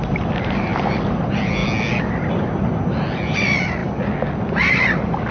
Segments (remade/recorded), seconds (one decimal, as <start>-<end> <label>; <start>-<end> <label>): 0.0-0.7 remade; 0.7-1.2 recorded; 1.2-1.6 remade; 1.6-2.1 recorded; 2.1-3.8 remade; 3.8-4.5 recorded; 4.5-5.3 remade